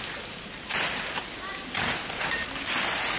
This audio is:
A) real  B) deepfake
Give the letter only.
A